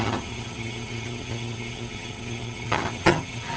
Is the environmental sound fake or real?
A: fake